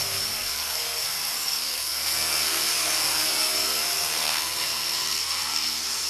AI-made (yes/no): yes